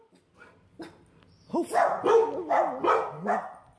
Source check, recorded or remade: recorded